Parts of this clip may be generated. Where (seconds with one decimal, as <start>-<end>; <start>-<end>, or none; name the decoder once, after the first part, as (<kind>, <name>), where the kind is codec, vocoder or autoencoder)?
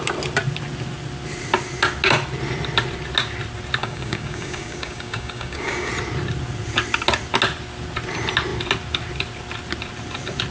3.8-5.9 (codec, DAC)